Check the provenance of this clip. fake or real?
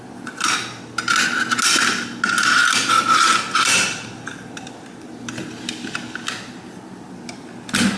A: real